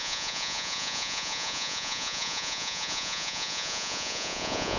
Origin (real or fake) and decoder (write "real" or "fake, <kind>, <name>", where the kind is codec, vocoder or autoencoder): fake, vocoder, Vocos